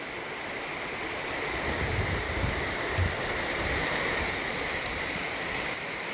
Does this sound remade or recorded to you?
recorded